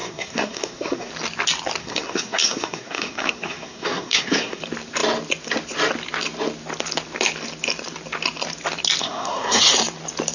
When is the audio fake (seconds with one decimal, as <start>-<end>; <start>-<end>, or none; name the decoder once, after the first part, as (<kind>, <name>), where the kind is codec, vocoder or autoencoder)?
0.0-1.1 (codec, SNAC); 1.8-4.6; 9.0-9.6